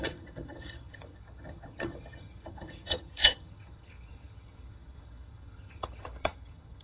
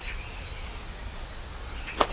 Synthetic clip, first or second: first